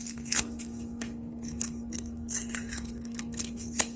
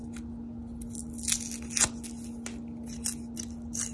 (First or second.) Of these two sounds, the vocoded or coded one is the first